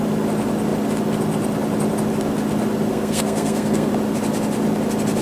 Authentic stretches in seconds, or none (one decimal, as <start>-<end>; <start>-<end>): 0.0-2.9; 3.9-5.2